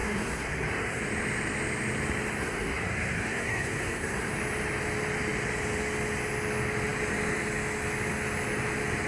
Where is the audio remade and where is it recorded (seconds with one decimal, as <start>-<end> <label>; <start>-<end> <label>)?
0.0-1.0 remade; 1.0-2.4 recorded; 2.4-4.3 remade; 4.3-9.1 recorded